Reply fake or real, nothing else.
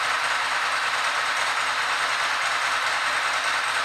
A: real